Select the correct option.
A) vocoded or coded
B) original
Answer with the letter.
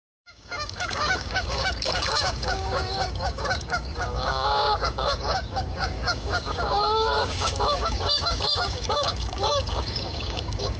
A